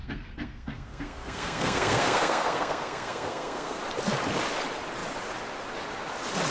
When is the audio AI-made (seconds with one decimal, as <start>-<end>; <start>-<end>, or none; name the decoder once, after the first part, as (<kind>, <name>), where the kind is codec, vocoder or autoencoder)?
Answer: 0.0-3.8 (codec, SNAC)